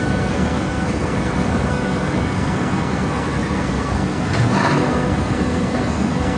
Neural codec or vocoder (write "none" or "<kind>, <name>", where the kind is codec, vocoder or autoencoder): codec, SNAC